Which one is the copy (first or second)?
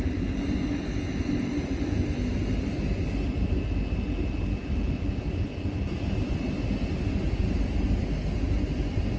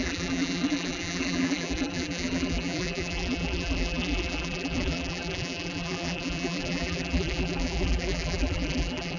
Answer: second